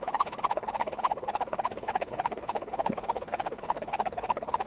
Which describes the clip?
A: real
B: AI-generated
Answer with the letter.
B